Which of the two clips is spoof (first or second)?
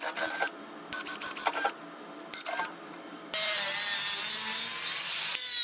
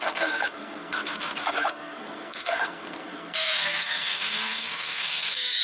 second